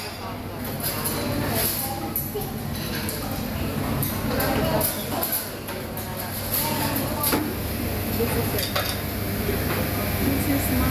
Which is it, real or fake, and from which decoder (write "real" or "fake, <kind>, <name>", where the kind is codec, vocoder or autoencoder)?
real